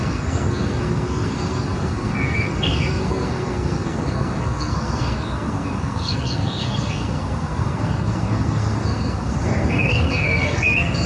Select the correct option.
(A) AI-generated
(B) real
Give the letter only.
A